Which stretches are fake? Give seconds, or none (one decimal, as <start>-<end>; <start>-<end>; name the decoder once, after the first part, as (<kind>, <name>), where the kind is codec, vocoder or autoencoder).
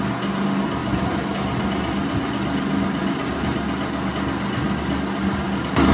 none